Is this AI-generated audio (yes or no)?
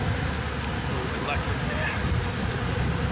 no